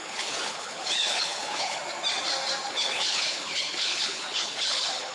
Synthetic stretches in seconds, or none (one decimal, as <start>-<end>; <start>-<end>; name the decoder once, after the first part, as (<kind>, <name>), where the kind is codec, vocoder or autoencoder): 0.0-1.8 (codec, HILCodec); 2.7-5.1